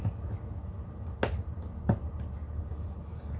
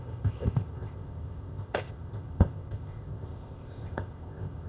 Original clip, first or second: first